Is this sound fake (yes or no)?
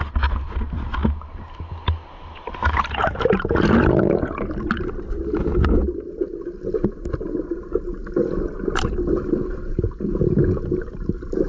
no